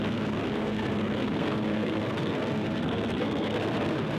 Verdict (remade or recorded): remade